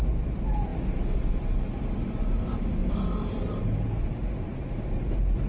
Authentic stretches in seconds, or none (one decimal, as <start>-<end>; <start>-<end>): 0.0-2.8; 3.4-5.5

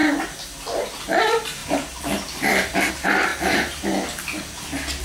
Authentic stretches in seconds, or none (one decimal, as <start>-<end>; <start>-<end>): 0.0-1.0; 3.3-5.0

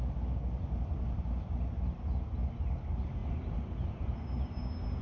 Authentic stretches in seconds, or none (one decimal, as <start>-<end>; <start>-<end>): 0.0-3.2; 4.6-5.0

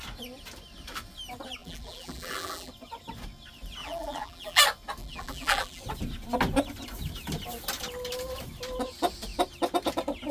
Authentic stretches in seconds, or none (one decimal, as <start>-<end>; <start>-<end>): 0.0-1.6; 2.7-3.8; 4.6-5.0; 5.8-10.3

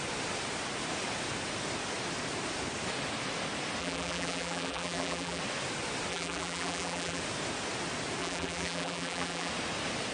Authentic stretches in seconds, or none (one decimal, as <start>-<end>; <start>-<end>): 0.0-3.8; 5.4-6.1; 7.2-8.2; 9.5-10.1

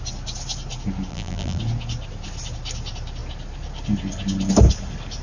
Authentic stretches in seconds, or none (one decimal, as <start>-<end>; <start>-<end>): 0.0-1.1; 1.6-5.2

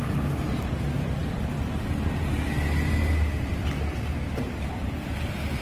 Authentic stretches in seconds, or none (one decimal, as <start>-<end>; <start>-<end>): 0.0-5.6

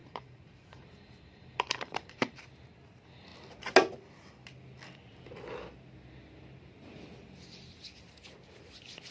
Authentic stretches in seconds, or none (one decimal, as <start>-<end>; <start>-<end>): 2.4-9.1